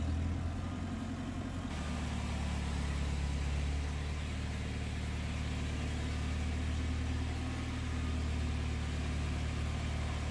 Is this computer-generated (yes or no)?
no